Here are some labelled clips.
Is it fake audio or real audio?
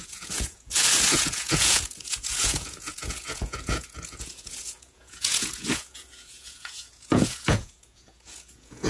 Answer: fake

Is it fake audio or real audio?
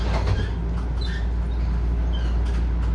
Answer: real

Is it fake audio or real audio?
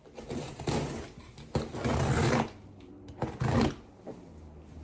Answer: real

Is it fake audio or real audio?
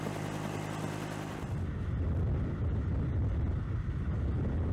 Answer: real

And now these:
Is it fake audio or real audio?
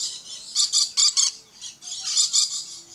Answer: real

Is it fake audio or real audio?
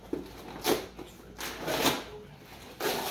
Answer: real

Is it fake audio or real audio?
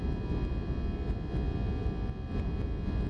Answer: real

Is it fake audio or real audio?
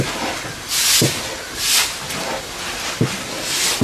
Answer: real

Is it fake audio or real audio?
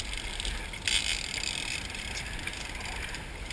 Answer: real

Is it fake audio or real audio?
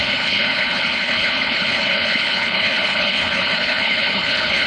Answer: fake